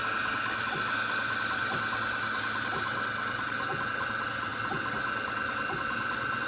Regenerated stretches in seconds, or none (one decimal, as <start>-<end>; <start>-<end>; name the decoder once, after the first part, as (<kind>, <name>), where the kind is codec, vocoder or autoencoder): none